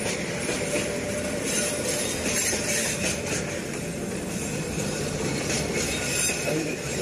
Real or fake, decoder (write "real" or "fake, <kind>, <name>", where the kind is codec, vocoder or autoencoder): real